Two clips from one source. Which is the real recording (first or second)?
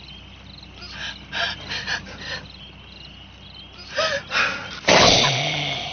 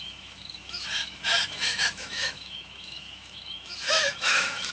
first